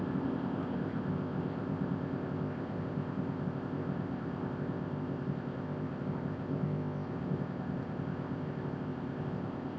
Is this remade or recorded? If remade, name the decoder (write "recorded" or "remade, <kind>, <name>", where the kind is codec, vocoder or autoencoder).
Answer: remade, codec, ZipCodec